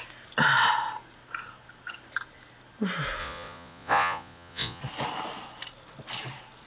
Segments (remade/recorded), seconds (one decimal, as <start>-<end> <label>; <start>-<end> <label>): 0.0-3.2 recorded; 3.2-4.8 remade; 4.8-6.7 recorded

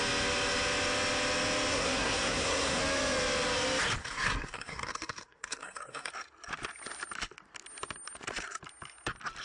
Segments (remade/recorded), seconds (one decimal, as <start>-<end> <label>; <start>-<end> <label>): 0.0-1.7 recorded; 1.7-2.8 remade; 2.8-4.0 recorded; 4.0-6.1 remade; 6.1-9.4 recorded